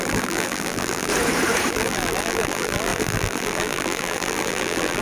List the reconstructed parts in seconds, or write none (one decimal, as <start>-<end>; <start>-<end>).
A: 0.0-1.1; 1.7-5.0